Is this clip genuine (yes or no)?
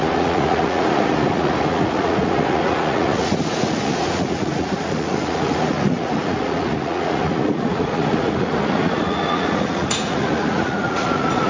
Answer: no